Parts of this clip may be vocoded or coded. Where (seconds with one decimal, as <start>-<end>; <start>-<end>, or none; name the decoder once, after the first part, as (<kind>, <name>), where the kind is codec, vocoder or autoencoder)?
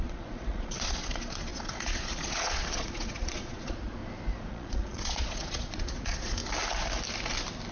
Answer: 0.0-4.0 (vocoder, Vocos); 4.5-6.4